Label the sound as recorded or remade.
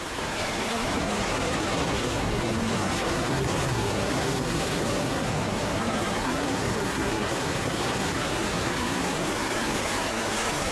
remade